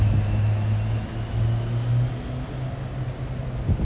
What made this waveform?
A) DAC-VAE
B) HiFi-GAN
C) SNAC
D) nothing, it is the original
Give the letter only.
D